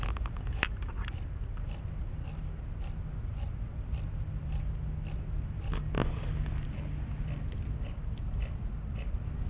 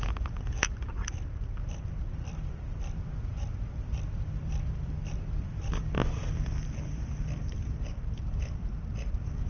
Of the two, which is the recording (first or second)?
first